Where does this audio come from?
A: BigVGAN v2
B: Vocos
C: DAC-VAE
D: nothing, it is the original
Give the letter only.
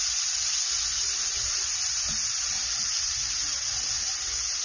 D